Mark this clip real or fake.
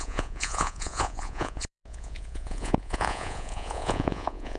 fake